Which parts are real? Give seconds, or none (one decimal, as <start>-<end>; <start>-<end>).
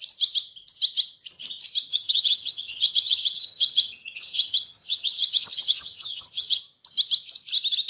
0.0-1.9; 6.6-7.9